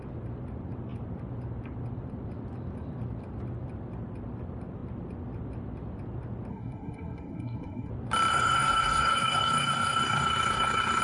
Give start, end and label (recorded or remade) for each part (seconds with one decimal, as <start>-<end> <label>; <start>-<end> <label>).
0.0-6.5 recorded; 6.5-7.9 remade; 7.9-8.3 recorded; 8.3-11.0 remade